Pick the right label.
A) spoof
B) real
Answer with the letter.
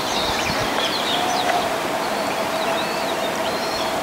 A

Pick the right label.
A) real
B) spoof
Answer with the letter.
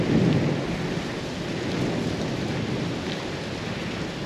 A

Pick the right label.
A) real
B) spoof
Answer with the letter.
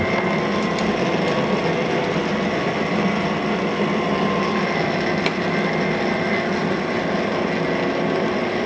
A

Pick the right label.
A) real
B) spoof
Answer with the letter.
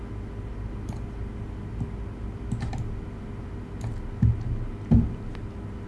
A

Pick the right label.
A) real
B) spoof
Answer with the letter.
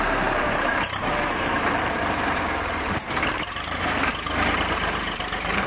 B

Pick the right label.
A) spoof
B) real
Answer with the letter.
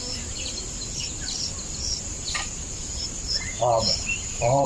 A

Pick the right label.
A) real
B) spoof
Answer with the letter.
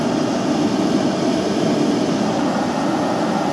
A